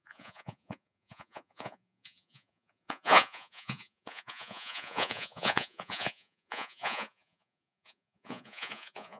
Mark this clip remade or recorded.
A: remade